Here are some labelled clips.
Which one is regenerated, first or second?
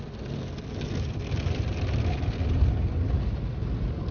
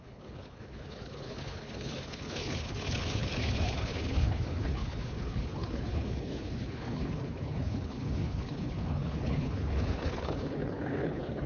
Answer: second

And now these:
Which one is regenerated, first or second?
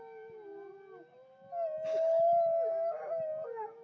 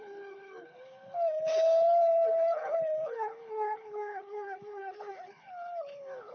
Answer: second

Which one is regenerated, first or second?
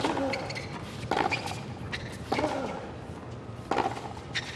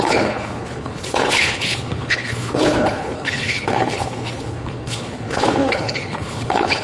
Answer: second